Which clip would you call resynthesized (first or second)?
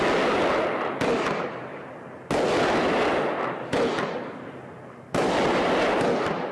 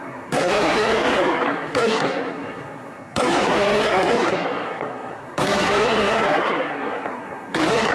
second